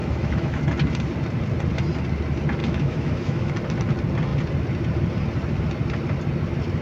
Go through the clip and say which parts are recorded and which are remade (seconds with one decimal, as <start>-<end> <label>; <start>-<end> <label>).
0.0-0.6 remade; 0.6-2.6 recorded; 2.6-3.5 remade; 3.5-6.8 recorded